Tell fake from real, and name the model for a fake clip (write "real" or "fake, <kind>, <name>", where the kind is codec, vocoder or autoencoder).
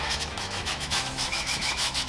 fake, autoencoder, DAC-VAE